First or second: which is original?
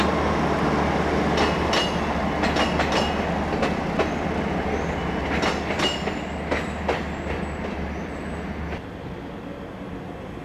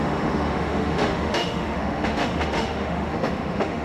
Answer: first